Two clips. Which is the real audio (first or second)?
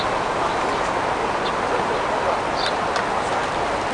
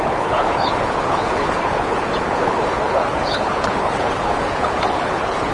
first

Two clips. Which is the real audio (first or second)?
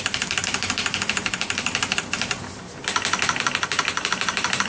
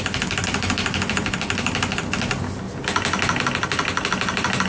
second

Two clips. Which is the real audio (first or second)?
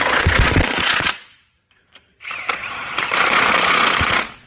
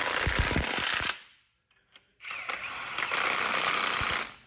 second